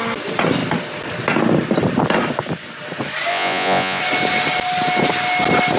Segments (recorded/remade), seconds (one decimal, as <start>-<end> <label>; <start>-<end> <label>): 0.0-3.3 recorded; 3.3-4.0 remade; 4.0-5.8 recorded